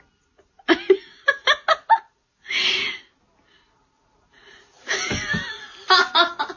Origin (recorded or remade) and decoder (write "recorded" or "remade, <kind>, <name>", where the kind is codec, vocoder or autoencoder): recorded